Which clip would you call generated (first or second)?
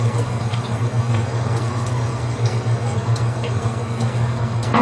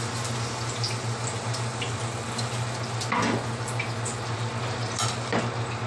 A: first